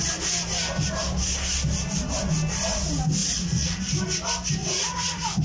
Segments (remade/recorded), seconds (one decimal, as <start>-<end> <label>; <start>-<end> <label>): 0.0-3.2 recorded; 3.2-3.8 remade; 3.8-4.6 recorded; 4.6-5.4 remade